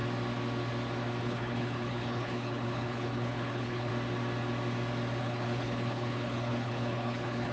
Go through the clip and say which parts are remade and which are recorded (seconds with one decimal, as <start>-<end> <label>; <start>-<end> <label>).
0.0-1.2 recorded; 1.2-3.9 remade; 3.9-5.2 recorded; 5.2-7.5 remade